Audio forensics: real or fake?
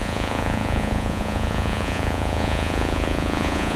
fake